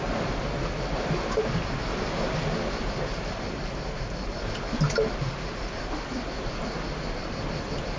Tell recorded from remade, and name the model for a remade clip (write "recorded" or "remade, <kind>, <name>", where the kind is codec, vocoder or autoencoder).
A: recorded